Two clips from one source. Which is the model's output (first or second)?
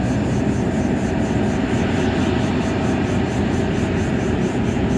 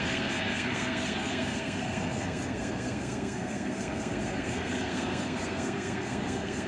second